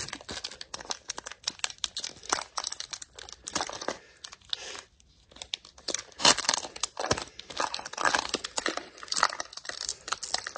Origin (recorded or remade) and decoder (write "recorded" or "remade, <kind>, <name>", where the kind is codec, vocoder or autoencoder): recorded